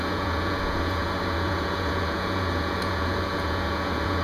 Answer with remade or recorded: remade